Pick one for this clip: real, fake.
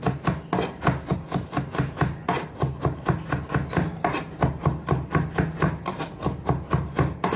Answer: real